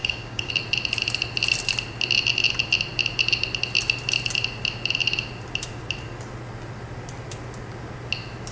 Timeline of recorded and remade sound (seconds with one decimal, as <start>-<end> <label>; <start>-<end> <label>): 0.0-0.5 remade; 0.5-8.5 recorded